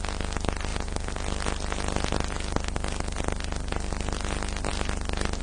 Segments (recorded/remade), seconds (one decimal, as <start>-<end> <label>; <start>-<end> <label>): 0.0-5.4 recorded